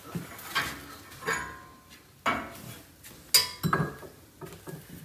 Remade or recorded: recorded